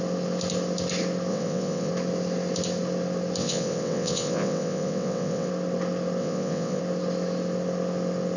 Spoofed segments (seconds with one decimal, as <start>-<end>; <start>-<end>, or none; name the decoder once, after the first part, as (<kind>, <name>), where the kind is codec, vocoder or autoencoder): 1.3-1.9 (vocoder, WaveNeXt); 3.4-5.5; 6.2-6.8